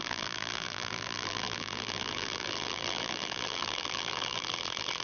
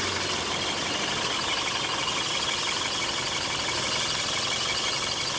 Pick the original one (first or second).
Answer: second